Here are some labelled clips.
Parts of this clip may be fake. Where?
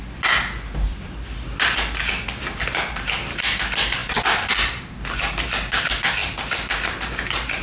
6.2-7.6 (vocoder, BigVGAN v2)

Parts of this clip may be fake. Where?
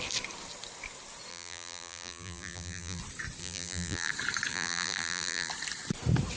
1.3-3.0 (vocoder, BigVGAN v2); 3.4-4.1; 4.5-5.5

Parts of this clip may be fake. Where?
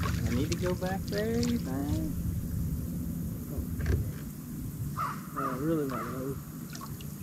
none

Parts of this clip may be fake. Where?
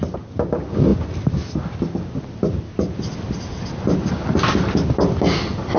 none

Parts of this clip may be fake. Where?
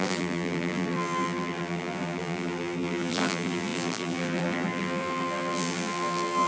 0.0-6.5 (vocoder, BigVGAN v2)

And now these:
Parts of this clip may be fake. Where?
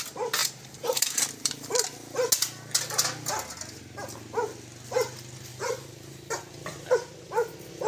0.4-1.5 (vocoder, BigVGAN v2); 5.5-6.4; 6.9-7.9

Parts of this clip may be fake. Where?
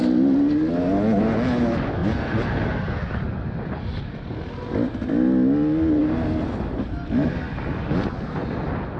none